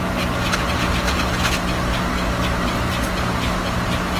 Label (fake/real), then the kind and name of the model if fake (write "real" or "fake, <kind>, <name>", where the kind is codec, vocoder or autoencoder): real